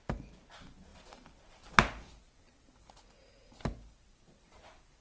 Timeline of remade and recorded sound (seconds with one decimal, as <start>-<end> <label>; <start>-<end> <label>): 0.0-5.0 recorded